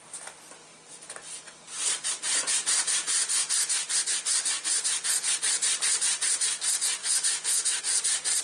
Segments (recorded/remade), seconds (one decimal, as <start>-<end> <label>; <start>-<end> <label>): 0.0-3.4 recorded; 3.4-3.9 remade; 3.9-7.0 recorded; 7.0-7.8 remade; 7.8-8.4 recorded